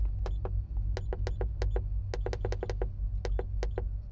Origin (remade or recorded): recorded